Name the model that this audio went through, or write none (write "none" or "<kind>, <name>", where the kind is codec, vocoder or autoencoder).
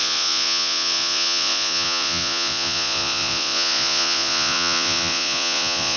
vocoder, Vocos